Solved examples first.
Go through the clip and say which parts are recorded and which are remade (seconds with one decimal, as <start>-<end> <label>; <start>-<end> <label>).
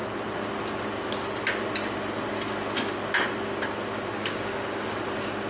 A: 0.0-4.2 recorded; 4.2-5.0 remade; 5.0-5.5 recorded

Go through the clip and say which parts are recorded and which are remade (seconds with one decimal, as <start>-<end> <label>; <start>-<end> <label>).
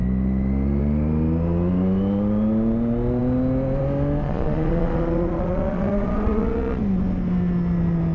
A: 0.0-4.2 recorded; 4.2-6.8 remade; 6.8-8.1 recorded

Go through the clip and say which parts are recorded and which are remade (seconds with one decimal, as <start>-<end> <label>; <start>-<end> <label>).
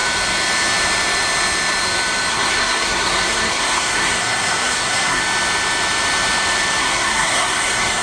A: 0.0-2.3 recorded; 2.3-5.2 remade; 5.2-6.8 recorded; 6.8-8.0 remade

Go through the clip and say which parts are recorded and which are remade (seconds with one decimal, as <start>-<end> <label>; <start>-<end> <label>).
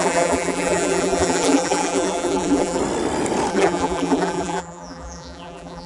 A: 0.0-2.8 remade; 2.8-3.5 recorded; 3.5-5.9 remade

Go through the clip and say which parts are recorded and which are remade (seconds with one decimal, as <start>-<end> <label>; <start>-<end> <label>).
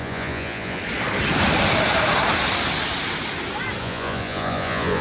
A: 0.0-0.8 remade; 0.8-3.8 recorded; 3.8-5.0 remade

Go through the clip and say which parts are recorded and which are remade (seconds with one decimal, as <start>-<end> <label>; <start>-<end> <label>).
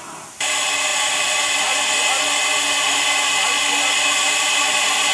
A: 0.0-5.1 recorded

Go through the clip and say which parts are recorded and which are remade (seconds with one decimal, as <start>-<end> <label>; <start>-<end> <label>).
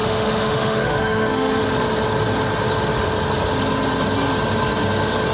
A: 0.0-1.6 remade; 1.6-5.3 recorded